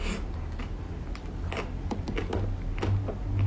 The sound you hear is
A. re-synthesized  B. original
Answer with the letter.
B